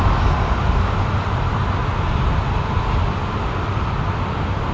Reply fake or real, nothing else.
real